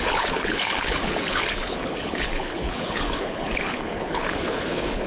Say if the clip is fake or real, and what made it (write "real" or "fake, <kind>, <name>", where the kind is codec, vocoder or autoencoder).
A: fake, codec, HILCodec